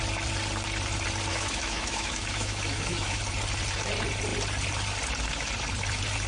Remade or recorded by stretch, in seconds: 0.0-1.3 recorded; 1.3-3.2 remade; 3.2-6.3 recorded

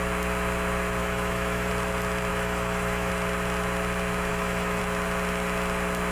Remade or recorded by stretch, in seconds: 0.0-1.0 recorded; 1.0-1.7 remade; 1.7-2.3 recorded; 2.3-3.1 remade; 3.1-4.3 recorded; 4.3-4.8 remade; 4.8-6.1 recorded

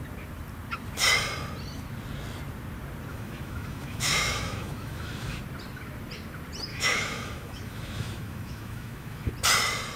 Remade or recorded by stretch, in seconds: 0.0-3.1 recorded; 3.1-5.4 remade; 5.4-6.7 recorded; 6.7-9.3 remade; 9.3-10.0 recorded

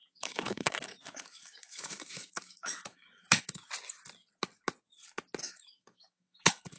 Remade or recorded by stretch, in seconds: 0.0-3.6 remade; 3.6-5.4 recorded; 5.4-6.8 remade

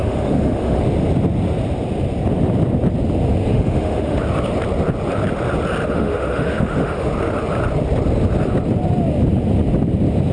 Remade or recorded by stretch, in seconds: 0.0-0.8 remade; 0.8-3.5 recorded; 3.5-4.2 remade; 4.2-5.9 recorded; 5.9-7.1 remade; 7.1-10.3 recorded

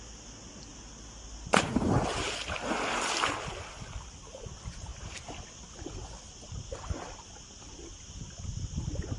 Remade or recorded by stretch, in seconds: 0.0-9.2 recorded